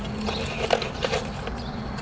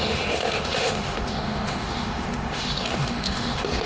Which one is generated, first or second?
second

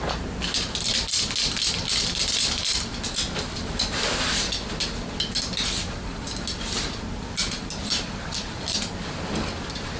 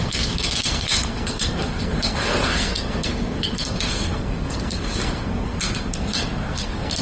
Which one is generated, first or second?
second